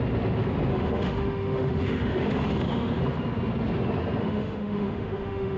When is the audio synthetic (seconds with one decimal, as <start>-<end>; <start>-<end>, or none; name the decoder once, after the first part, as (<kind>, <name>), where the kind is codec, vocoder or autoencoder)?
0.7-3.0 (autoencoder, DAC-VAE); 4.2-5.6